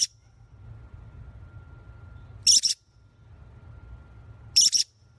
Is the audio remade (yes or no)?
no